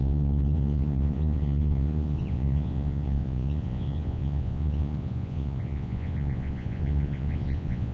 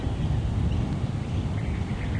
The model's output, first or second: first